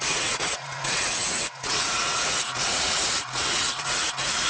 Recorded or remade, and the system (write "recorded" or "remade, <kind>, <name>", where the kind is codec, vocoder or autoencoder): remade, vocoder, Vocos